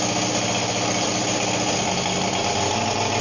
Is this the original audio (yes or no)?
yes